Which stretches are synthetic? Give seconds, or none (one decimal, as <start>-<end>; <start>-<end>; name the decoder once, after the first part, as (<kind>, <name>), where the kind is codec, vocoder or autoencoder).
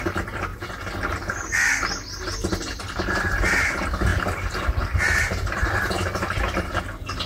4.1-6.8 (vocoder, BigVGAN v2)